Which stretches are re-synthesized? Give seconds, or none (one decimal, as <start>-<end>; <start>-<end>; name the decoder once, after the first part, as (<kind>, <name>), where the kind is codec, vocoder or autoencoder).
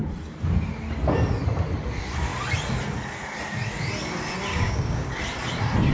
4.5-5.1 (codec, DAC)